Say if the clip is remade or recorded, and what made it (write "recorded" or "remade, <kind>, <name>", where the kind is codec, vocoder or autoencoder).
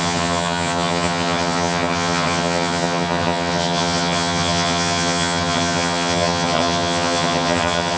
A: remade, vocoder, HiFi-GAN